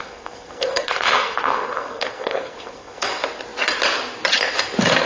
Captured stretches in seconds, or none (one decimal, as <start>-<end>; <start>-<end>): 3.1-5.1